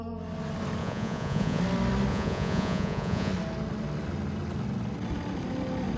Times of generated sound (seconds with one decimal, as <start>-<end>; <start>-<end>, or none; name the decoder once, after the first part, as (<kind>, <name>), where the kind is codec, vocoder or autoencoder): 0.8-1.6 (vocoder, Vocos); 2.1-3.3